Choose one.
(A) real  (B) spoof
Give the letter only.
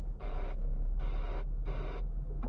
A